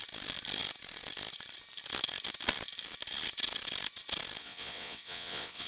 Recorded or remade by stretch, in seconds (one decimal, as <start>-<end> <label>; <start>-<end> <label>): 0.0-4.4 recorded; 4.4-5.7 remade